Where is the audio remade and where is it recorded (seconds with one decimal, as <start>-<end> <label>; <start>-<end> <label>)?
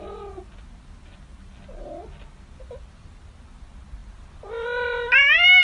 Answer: 0.0-5.6 recorded